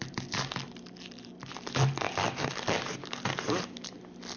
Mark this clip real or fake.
real